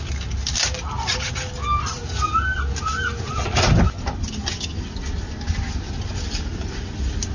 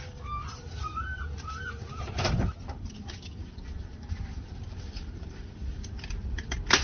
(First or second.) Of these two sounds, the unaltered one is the first